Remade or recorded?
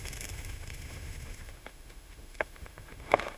remade